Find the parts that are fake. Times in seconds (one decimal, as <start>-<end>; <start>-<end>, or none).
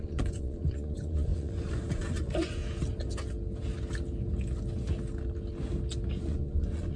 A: 0.0-2.6; 6.2-7.0